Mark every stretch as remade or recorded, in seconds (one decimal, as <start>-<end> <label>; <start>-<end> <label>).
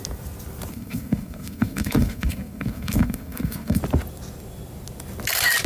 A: 0.0-0.7 recorded; 0.7-3.8 remade; 3.8-5.7 recorded